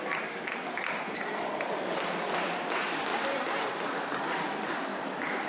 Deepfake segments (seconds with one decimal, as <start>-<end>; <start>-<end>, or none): 1.5-2.0; 3.1-3.7; 4.9-5.5